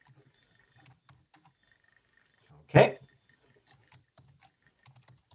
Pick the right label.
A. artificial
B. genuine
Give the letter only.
B